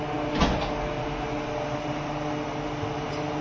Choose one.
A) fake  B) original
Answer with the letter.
B